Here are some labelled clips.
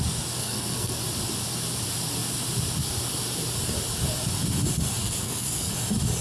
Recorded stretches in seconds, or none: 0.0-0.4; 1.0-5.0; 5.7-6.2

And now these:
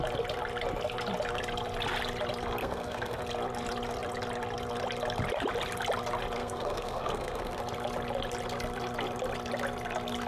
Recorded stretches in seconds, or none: 0.0-2.6; 3.2-6.4; 7.6-10.3